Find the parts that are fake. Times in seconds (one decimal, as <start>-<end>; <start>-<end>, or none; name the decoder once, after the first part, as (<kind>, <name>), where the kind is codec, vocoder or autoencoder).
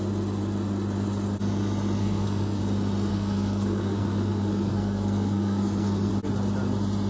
2.0-2.6 (codec, SNAC); 3.1-6.1